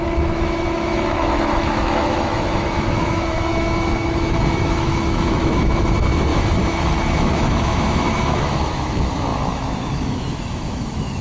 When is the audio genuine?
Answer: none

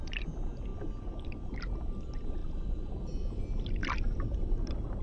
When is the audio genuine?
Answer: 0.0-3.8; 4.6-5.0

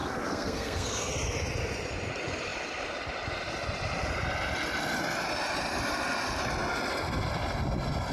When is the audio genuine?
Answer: 1.1-8.1

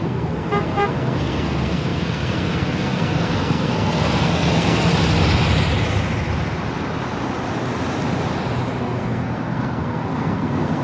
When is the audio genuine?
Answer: 4.9-8.8